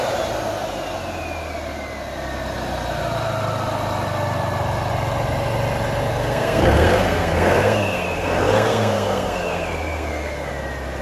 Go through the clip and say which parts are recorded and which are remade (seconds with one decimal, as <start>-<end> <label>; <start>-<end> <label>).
0.0-6.1 recorded; 6.1-10.5 remade; 10.5-11.0 recorded